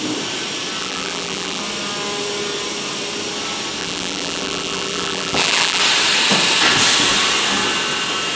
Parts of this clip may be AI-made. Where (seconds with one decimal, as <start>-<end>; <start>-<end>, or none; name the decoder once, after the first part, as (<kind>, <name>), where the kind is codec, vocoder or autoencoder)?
0.8-1.6 (vocoder, BigVGAN v2); 3.8-5.8